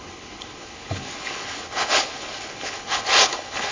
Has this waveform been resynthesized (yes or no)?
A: yes